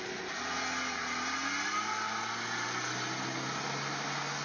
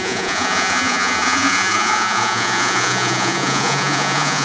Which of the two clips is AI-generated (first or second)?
second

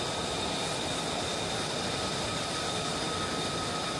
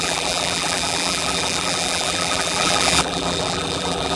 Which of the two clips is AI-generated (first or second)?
second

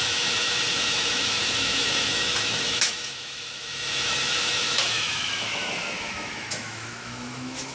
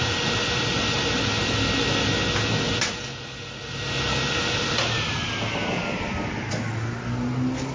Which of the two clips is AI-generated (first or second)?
first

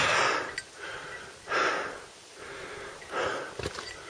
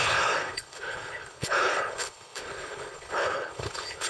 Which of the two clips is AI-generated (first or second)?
second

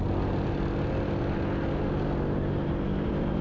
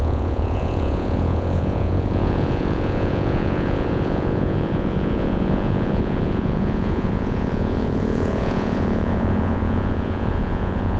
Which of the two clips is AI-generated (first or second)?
second